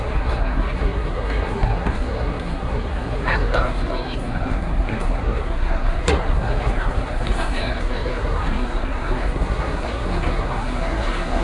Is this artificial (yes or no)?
yes